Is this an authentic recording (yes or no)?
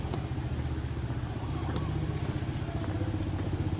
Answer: yes